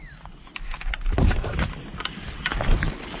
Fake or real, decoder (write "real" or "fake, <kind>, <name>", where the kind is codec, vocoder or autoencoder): fake, vocoder, BigVGAN v2